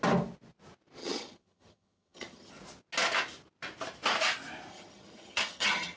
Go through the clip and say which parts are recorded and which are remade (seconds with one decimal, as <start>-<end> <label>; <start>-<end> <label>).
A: 0.0-1.0 recorded; 1.0-2.5 remade; 2.5-4.7 recorded; 4.7-6.0 remade